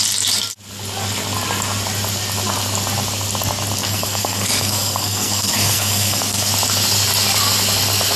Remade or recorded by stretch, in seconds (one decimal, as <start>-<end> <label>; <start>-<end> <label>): 0.0-3.8 recorded; 3.8-6.5 remade; 6.5-8.2 recorded